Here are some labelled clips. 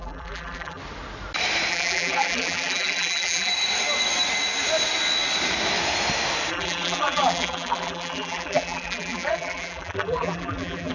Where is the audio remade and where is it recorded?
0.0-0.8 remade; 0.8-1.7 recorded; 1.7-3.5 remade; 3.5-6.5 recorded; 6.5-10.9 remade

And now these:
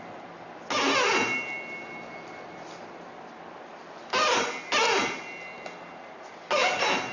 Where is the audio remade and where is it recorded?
0.0-3.7 recorded; 3.7-4.8 remade; 4.8-7.1 recorded

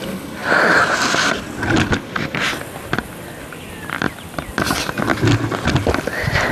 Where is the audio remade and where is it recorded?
0.0-0.4 recorded; 0.4-1.4 remade; 1.4-6.5 recorded

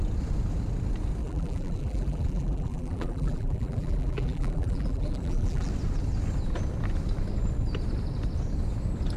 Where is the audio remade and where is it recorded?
0.0-1.2 recorded; 1.2-5.7 remade; 5.7-9.2 recorded